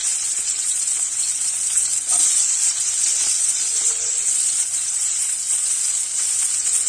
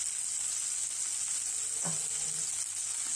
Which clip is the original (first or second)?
second